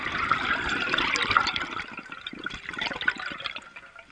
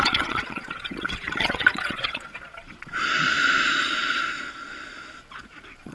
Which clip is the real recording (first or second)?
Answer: first